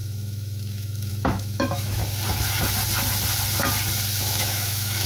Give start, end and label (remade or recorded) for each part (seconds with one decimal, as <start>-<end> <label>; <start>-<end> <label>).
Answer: 0.0-2.0 remade; 2.0-4.2 recorded; 4.2-5.1 remade